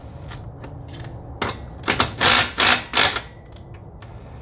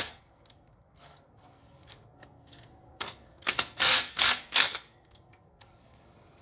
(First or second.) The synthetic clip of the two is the second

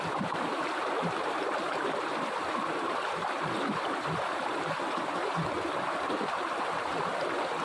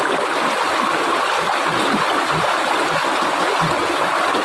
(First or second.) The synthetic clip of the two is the first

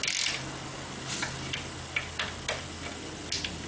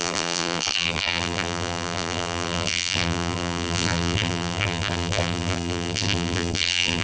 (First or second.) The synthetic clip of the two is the second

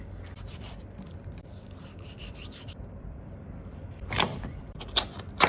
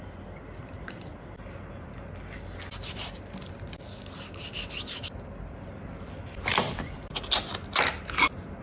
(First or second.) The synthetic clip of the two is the first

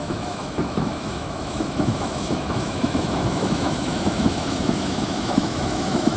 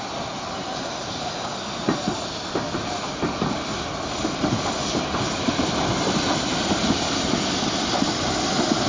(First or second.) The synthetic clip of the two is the first